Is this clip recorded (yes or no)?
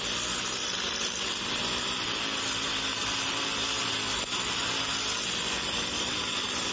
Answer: yes